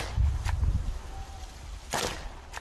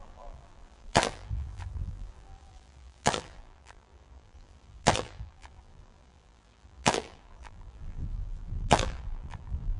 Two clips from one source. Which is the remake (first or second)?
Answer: second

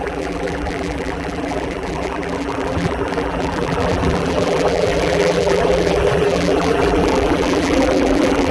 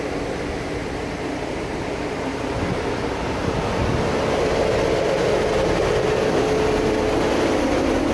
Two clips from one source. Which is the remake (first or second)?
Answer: first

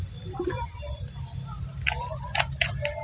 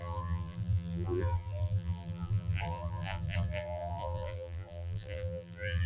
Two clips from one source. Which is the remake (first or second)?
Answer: second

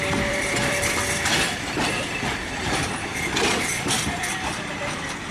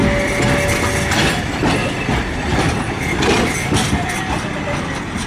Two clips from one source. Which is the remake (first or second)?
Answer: first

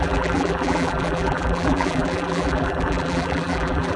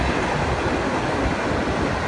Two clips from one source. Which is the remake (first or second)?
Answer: first